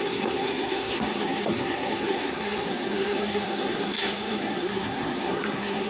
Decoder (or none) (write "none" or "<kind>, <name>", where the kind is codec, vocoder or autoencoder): codec, SNAC